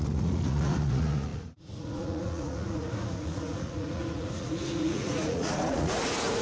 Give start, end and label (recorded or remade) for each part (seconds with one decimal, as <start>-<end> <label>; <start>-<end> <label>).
0.0-6.4 remade